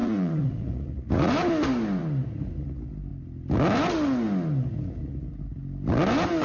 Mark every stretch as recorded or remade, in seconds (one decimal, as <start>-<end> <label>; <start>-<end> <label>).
0.0-1.3 remade; 1.3-6.4 recorded